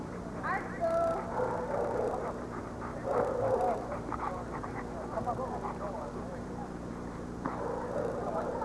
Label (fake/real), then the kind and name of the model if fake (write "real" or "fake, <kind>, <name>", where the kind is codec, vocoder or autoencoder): fake, vocoder, BigVGAN v2